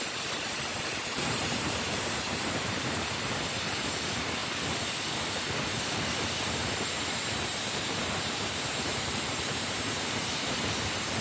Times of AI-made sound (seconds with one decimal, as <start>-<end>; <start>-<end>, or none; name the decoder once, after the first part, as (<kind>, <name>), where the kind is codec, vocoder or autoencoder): 0.7-2.9 (vocoder, BigVGAN v2); 6.6-10.4